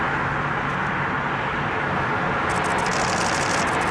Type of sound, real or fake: real